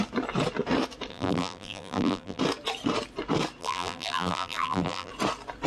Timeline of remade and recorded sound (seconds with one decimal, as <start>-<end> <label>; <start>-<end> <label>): 0.0-1.1 recorded; 1.1-2.4 remade; 2.4-3.6 recorded; 3.6-5.1 remade; 5.1-5.7 recorded